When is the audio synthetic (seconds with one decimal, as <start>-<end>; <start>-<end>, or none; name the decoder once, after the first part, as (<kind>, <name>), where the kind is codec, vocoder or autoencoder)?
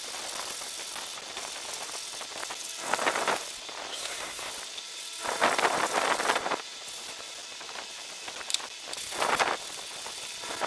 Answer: 3.9-4.5 (codec, SNAC)